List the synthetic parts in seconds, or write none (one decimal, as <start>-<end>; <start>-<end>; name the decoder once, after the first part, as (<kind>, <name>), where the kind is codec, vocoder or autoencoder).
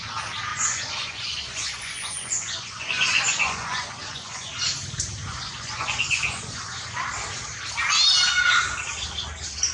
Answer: 0.5-4.5 (vocoder, Vocos); 5.2-7.0